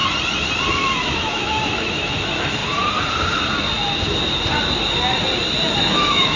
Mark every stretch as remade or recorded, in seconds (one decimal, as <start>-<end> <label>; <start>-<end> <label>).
0.0-0.7 recorded; 0.7-2.6 remade; 2.6-5.8 recorded; 5.8-6.4 remade